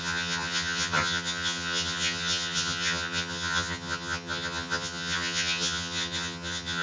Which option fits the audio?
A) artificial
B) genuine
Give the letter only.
A